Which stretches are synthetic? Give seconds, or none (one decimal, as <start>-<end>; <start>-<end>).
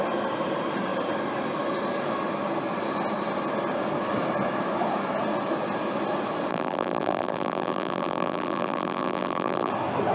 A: 6.5-9.7